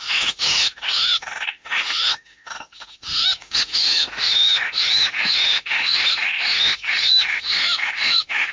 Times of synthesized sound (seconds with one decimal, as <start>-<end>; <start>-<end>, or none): 0.0-8.5